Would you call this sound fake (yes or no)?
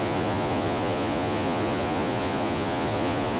yes